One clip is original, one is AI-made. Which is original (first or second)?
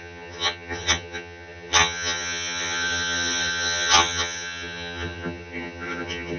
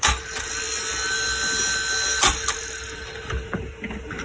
second